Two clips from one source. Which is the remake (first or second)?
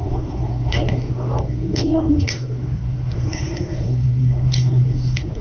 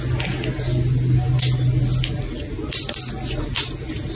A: first